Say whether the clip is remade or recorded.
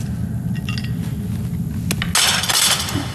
recorded